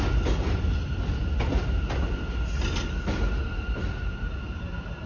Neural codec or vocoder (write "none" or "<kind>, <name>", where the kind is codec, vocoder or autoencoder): none